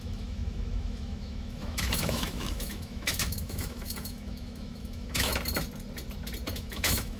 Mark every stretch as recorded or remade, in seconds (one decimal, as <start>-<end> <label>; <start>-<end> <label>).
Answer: 0.0-5.3 remade; 5.3-6.5 recorded; 6.5-7.2 remade